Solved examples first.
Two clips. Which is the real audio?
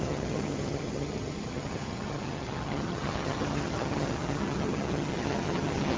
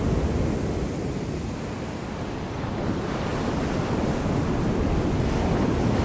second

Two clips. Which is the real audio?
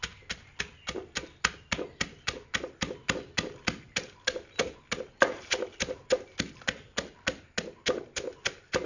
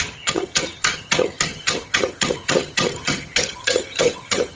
first